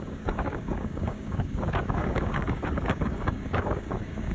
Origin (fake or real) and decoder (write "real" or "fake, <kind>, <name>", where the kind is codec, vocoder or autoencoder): fake, codec, DAC